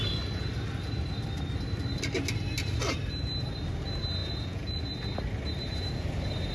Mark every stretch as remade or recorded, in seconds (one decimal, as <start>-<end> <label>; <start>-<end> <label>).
0.0-4.2 recorded; 4.2-4.8 remade; 4.8-6.5 recorded